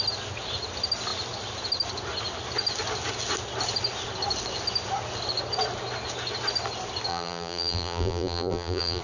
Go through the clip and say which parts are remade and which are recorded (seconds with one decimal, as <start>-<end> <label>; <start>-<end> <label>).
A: 0.0-7.1 recorded; 7.1-9.0 remade